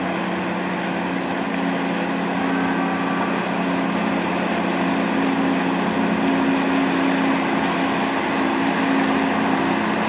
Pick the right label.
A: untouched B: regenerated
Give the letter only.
A